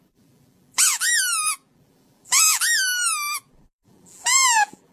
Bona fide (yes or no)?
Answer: no